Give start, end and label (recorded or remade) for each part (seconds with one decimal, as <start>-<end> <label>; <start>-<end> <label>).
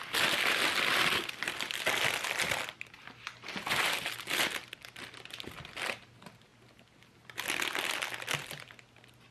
0.0-9.3 recorded